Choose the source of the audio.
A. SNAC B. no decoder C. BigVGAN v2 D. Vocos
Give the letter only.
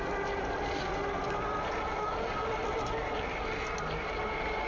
B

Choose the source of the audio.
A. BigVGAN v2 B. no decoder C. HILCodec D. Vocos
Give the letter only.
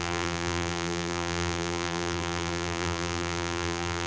A